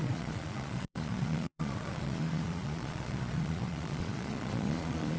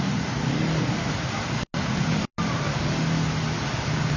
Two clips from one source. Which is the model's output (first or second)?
first